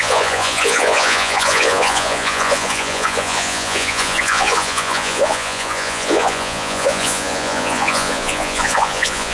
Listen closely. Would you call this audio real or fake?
fake